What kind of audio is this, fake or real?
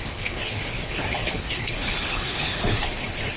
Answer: fake